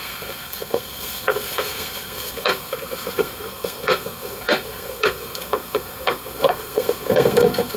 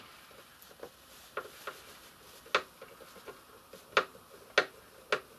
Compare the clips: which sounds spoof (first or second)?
first